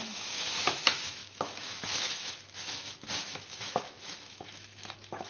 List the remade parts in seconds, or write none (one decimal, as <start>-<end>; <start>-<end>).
0.0-5.3